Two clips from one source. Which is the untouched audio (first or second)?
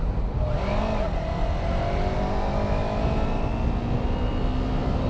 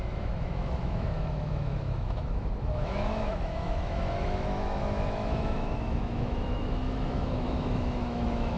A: first